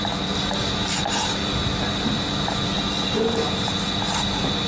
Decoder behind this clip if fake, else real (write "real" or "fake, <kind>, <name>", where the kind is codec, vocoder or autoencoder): real